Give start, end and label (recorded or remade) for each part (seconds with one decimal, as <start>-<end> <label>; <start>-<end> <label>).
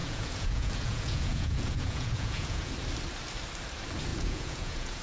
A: 0.0-2.7 remade; 2.7-4.1 recorded; 4.1-5.0 remade